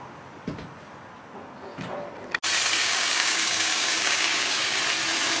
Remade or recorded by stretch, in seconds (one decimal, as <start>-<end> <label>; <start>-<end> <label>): 0.0-2.8 recorded; 2.8-4.8 remade; 4.8-5.4 recorded

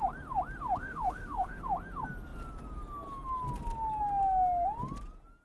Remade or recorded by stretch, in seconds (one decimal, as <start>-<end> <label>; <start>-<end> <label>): 0.0-0.8 recorded; 0.8-1.6 remade; 1.6-5.4 recorded

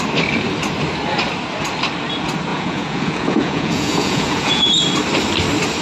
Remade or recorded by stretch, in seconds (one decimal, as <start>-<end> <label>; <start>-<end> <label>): 0.0-2.5 recorded; 2.5-4.7 remade; 4.7-5.8 recorded

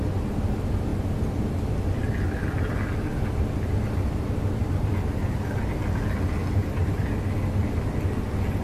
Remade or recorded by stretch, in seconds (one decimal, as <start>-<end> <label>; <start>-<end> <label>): 0.0-6.6 recorded; 6.6-7.1 remade; 7.1-8.6 recorded

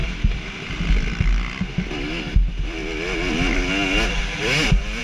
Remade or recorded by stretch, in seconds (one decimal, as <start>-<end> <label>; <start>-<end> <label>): 0.0-0.8 remade; 0.8-5.0 recorded

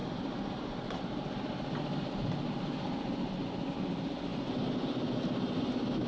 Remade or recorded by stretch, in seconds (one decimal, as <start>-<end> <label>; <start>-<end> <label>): 0.0-6.1 recorded